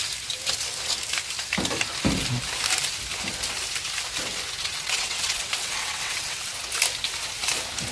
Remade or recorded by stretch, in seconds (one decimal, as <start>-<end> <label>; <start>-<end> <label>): 0.0-4.6 recorded; 4.6-6.5 remade; 6.5-7.9 recorded